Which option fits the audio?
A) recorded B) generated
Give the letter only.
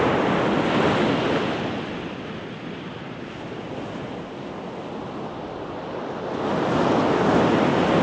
A